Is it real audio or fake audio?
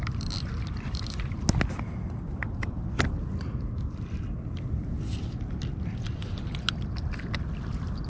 real